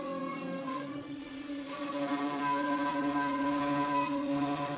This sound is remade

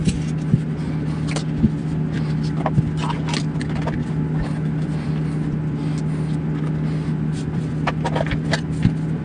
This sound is recorded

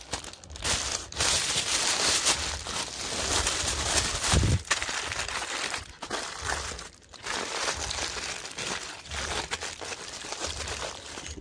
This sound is recorded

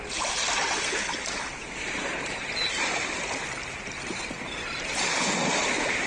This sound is recorded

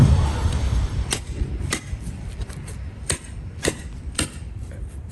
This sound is remade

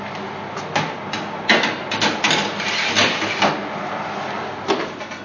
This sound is recorded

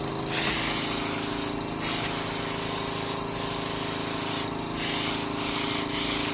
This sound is recorded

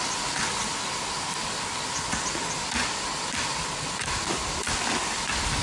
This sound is recorded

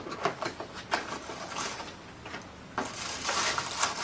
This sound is recorded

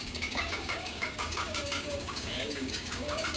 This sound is remade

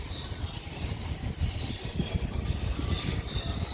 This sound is recorded